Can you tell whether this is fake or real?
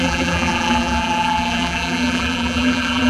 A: fake